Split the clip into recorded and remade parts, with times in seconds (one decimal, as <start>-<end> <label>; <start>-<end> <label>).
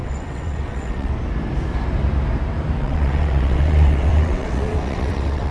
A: 0.0-1.1 remade; 1.1-2.8 recorded; 2.8-5.5 remade